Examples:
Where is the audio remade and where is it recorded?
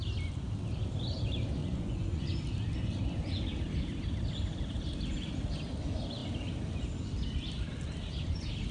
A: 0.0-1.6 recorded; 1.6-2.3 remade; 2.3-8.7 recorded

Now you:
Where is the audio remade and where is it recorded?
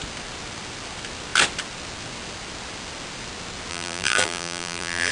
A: 0.0-3.7 recorded; 3.7-5.1 remade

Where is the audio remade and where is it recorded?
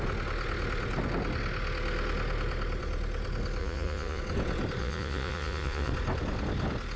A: 0.0-3.6 recorded; 3.6-4.2 remade; 4.2-4.8 recorded; 4.8-5.9 remade; 5.9-7.0 recorded